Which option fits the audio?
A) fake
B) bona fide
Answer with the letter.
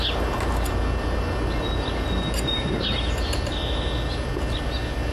B